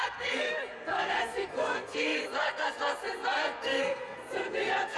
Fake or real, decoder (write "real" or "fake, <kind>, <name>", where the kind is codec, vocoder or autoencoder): fake, codec, SNAC